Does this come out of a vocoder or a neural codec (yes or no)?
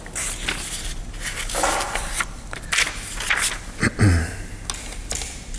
no